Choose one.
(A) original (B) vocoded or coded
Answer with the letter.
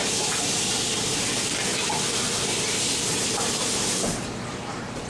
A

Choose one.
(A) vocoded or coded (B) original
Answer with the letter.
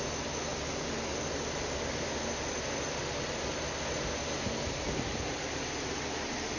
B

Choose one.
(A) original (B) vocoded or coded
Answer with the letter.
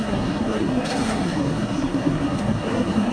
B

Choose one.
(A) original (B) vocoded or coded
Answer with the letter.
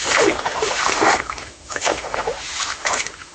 B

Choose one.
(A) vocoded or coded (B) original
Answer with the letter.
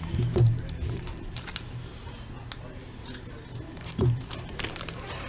A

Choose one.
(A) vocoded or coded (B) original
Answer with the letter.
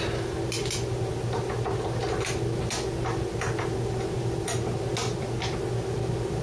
B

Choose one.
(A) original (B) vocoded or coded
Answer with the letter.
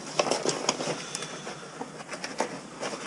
A